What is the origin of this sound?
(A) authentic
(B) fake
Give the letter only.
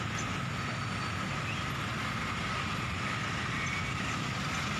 A